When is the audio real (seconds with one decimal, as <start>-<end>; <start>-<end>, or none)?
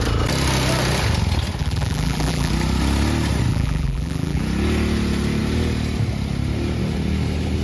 0.0-1.6; 2.5-3.5; 4.4-7.6